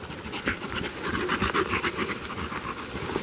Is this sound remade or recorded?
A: recorded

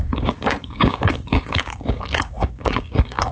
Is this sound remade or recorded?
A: remade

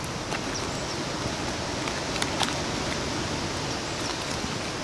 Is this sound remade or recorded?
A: recorded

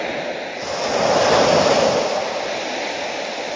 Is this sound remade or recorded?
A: recorded